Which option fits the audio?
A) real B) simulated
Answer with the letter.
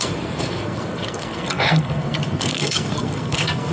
B